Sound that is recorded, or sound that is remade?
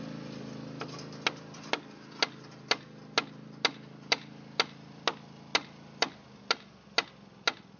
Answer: recorded